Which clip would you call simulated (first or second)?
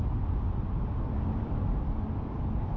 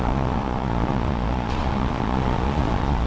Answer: second